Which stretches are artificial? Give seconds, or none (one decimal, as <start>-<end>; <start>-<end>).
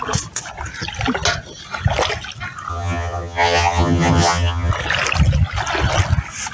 2.7-4.7